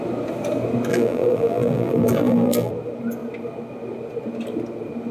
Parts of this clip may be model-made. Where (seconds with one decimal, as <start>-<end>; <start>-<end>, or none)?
0.9-2.7